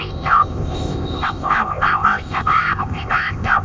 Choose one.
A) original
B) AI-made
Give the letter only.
B